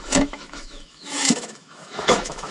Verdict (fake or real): fake